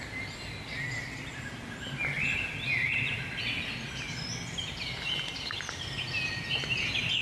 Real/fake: real